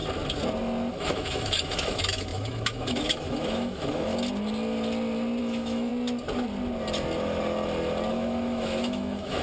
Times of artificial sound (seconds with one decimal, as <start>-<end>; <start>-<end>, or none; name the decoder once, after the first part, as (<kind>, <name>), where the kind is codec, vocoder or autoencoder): 0.9-4.1 (autoencoder, DAC-VAE); 5.4-5.9; 8.1-9.4